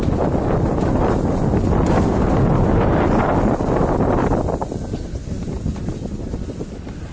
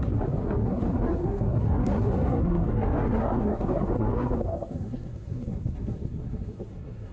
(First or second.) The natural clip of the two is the first